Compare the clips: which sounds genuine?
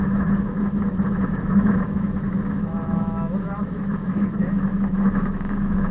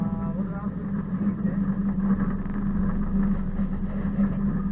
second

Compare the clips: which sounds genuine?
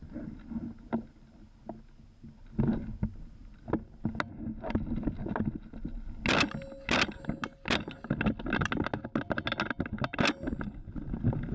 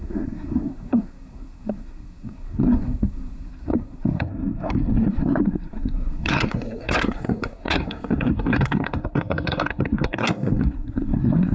first